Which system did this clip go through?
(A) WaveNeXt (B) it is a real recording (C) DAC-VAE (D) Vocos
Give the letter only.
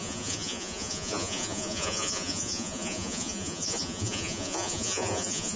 D